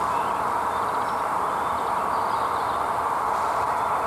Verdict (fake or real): real